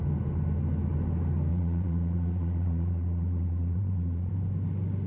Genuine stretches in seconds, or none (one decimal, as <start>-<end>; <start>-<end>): 0.0-1.5; 4.3-5.1